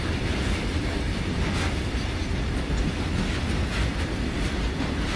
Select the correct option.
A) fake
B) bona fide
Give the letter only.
A